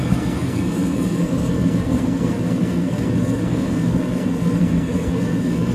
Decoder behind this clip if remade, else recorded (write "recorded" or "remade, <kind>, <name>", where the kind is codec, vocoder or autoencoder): remade, codec, SNAC